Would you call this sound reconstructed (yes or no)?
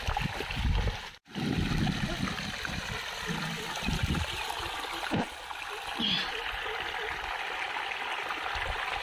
no